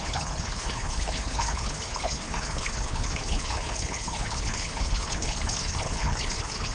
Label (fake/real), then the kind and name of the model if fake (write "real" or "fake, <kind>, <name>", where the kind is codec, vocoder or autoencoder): fake, codec, HILCodec